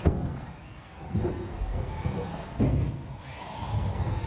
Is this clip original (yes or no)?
no